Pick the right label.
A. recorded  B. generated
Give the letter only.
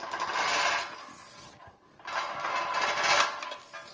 A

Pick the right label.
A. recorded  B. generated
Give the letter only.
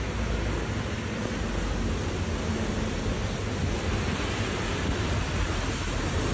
A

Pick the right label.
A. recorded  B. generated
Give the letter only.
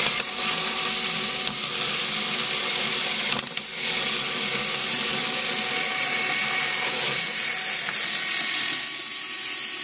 A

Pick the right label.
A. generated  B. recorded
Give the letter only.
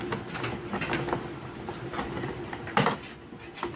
B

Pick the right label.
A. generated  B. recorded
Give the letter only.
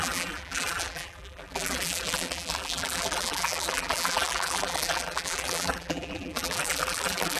A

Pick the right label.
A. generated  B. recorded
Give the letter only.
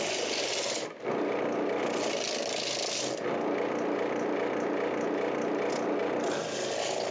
B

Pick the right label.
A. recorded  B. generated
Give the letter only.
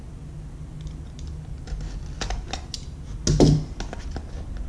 A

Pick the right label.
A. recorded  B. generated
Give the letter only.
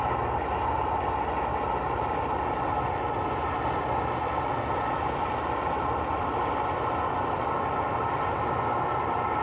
A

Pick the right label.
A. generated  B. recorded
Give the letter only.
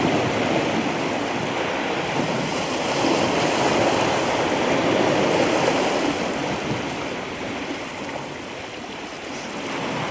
B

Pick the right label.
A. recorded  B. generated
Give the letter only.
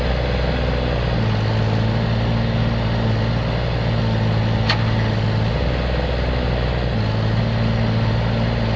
A